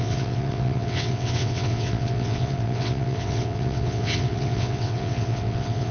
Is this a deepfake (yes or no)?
yes